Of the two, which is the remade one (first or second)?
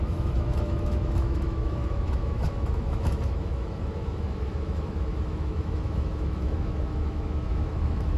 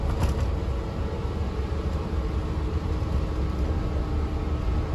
first